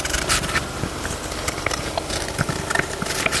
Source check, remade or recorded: remade